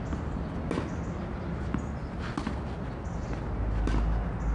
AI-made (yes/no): no